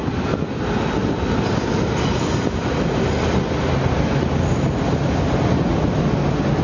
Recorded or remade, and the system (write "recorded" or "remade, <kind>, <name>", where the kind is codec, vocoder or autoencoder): recorded